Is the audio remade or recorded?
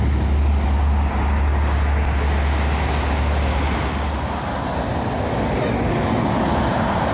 recorded